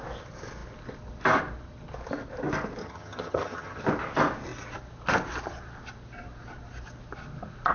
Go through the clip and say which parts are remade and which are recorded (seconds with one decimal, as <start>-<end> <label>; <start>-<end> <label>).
0.0-2.8 recorded; 2.8-3.8 remade; 3.8-7.7 recorded